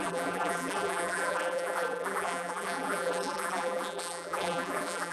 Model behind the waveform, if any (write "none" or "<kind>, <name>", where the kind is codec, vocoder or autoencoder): vocoder, BigVGAN v2